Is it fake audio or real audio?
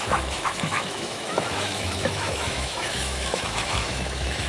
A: fake